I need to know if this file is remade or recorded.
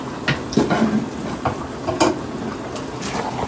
recorded